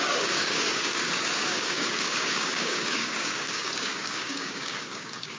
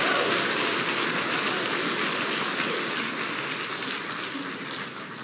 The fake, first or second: first